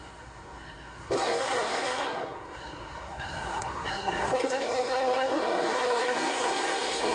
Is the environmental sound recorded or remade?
remade